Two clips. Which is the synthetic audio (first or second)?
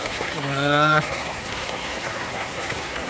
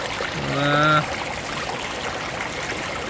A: first